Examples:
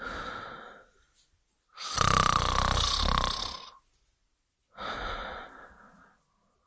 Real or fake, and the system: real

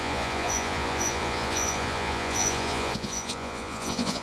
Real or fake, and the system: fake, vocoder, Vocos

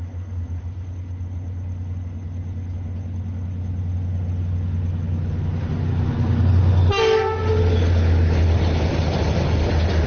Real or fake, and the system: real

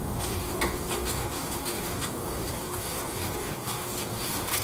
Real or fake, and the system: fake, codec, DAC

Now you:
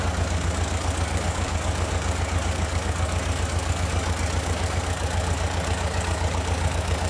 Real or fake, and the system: fake, codec, DAC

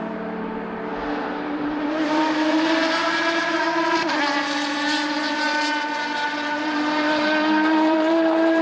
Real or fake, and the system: fake, vocoder, BigVGAN v2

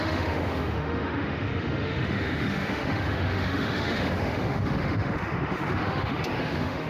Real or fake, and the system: fake, autoencoder, DAC-VAE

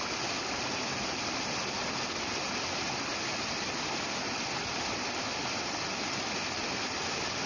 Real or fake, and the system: real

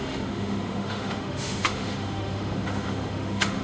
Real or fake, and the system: fake, autoencoder, DAC-VAE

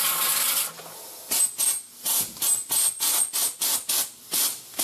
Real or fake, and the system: real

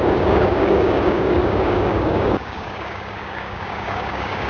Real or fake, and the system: fake, codec, DAC